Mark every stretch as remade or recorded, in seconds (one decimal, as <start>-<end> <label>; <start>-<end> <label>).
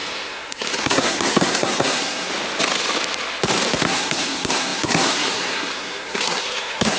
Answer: 0.0-2.3 remade; 2.3-3.8 recorded; 3.8-7.0 remade